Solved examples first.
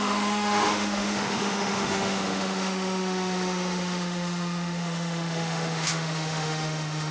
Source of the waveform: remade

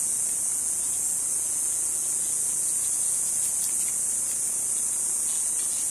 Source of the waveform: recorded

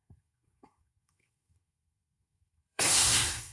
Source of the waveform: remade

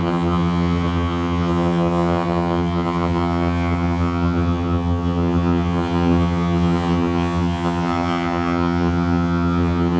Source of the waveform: remade